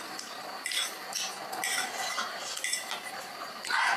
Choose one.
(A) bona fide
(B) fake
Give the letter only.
A